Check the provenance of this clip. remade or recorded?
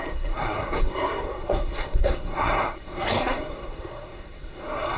remade